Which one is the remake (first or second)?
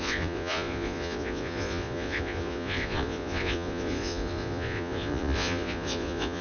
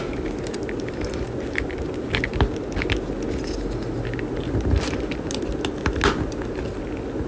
first